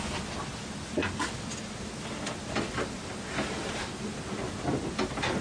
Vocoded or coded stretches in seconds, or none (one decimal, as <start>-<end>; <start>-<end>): none